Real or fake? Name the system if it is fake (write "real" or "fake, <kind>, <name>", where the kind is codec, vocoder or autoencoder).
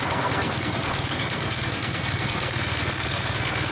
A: fake, codec, SNAC